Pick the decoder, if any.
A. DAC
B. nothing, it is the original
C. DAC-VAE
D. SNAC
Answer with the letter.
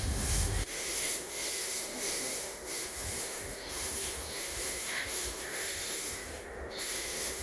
C